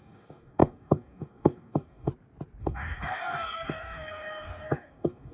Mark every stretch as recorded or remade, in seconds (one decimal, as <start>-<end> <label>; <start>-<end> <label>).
0.0-2.1 remade; 2.1-2.6 recorded; 2.6-5.3 remade

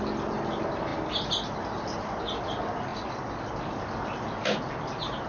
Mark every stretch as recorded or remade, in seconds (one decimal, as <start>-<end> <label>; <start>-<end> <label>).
0.0-5.3 recorded